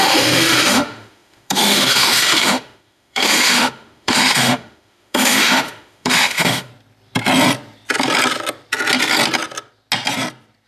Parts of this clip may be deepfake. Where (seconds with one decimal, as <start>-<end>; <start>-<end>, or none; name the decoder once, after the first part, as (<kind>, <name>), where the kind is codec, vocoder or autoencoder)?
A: 0.0-6.7 (autoencoder, DAC-VAE)